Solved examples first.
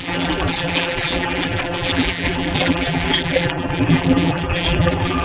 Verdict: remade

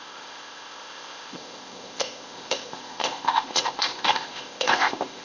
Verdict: remade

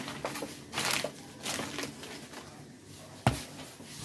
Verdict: recorded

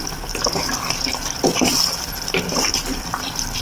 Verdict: recorded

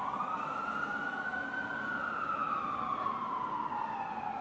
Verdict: recorded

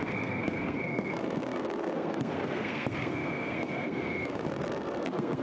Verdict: remade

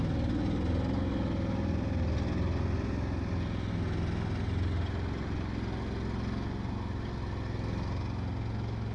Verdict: recorded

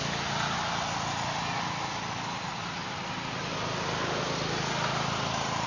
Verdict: recorded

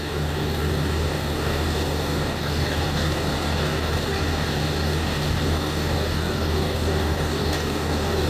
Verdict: remade